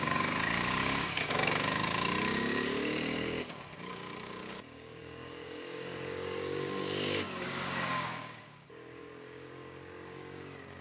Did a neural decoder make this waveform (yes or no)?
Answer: yes